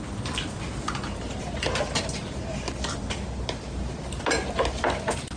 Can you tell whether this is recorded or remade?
recorded